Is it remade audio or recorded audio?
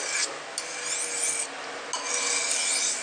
recorded